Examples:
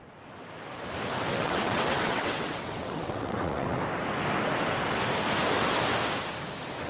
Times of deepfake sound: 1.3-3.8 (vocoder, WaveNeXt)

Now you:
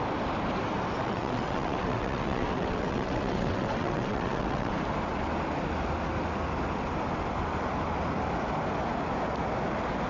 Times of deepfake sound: 1.0-4.7 (vocoder, WaveNeXt)

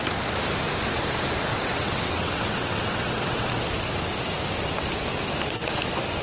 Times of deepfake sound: 1.5-3.5 (vocoder, WaveNeXt)

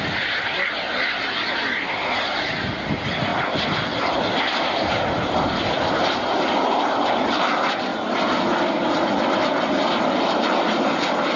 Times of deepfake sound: none

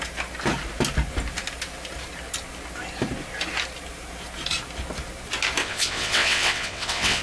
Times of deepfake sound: 5.6-7.2 (vocoder, WaveNeXt)

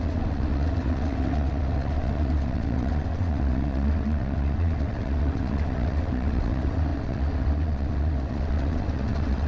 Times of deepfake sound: 0.0-9.5 (vocoder, WaveNeXt)

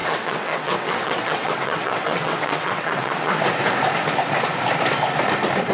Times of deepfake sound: 0.0-3.4 (vocoder, WaveNeXt)

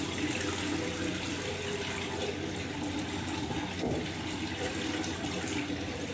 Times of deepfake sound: none